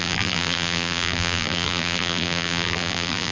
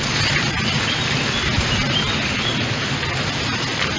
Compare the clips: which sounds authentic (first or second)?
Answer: second